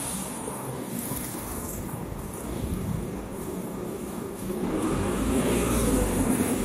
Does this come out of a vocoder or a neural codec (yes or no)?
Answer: yes